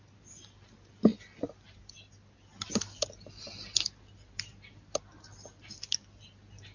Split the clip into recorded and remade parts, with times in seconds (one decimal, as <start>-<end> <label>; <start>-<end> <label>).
0.0-6.7 recorded